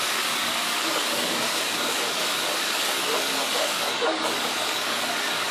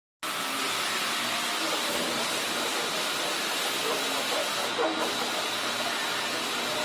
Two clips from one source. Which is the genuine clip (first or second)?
second